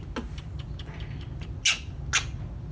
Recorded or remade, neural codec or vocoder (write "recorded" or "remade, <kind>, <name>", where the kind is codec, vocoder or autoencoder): recorded